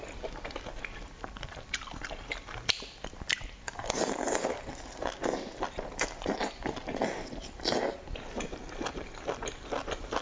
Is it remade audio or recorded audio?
recorded